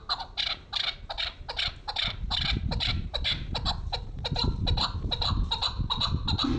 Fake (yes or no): no